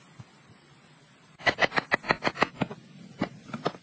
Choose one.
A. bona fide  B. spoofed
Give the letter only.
A